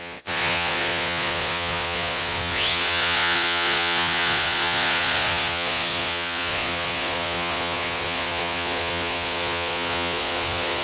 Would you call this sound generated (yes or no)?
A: yes